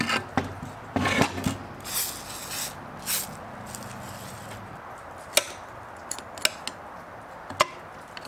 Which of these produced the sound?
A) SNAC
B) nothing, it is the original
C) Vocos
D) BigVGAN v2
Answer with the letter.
B